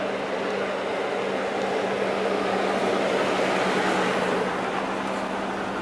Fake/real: real